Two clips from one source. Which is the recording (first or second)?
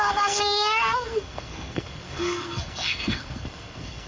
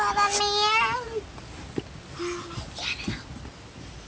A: second